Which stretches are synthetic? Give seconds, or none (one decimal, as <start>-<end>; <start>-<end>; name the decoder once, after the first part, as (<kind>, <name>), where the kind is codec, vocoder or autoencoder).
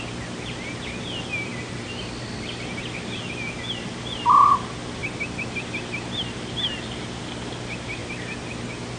none